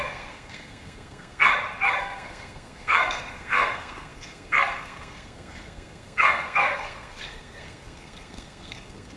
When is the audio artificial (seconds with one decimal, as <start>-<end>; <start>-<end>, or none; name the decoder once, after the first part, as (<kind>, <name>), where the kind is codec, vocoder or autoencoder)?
0.0-1.5 (codec, SNAC); 2.0-9.2